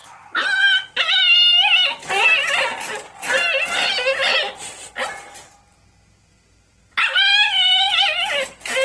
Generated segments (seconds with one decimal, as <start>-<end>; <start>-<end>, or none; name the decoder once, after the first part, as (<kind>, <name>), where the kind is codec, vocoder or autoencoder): none